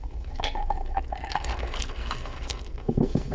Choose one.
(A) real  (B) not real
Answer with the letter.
B